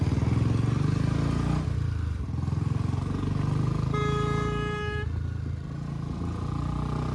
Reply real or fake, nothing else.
real